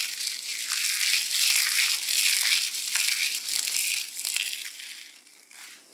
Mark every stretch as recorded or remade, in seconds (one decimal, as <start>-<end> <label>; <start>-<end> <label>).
0.0-5.9 recorded